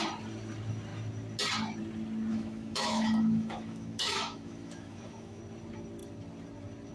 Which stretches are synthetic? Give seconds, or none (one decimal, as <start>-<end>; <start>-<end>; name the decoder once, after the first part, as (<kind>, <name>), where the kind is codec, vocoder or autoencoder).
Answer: 2.3-5.4 (autoencoder, DAC-VAE)